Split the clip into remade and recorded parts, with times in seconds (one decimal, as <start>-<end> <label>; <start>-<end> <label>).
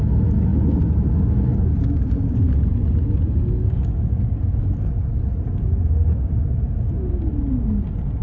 0.0-8.2 recorded